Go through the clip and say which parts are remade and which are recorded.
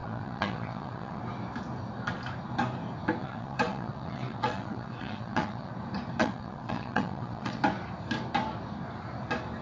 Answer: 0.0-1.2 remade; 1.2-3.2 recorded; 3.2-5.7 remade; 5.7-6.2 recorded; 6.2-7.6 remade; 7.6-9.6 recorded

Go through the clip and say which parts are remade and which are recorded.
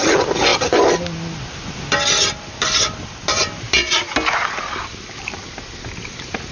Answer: 0.0-6.5 recorded